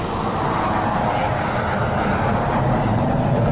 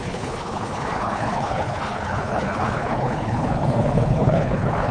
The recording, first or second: first